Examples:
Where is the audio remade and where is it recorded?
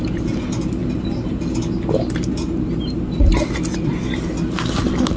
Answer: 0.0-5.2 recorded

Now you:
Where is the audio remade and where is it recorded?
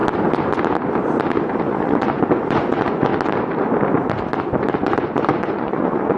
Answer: 0.0-1.6 recorded; 1.6-3.1 remade; 3.1-4.8 recorded; 4.8-6.2 remade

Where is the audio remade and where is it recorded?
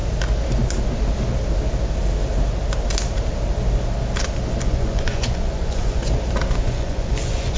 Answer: 0.0-4.6 recorded; 4.6-6.0 remade; 6.0-6.6 recorded; 6.6-7.6 remade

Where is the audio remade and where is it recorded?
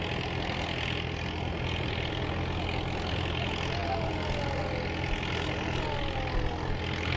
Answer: 0.0-7.2 recorded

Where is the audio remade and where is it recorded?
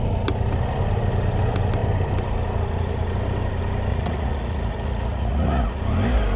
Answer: 0.0-3.9 recorded; 3.9-5.8 remade; 5.8-6.4 recorded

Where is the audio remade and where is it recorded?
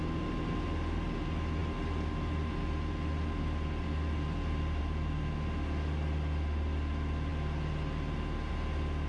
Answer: 0.0-9.1 recorded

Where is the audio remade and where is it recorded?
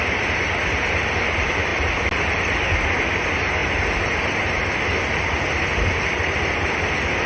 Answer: 0.0-7.3 recorded